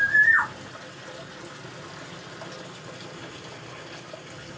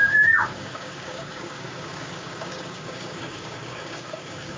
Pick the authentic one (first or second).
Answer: first